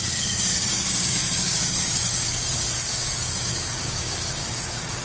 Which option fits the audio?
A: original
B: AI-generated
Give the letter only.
B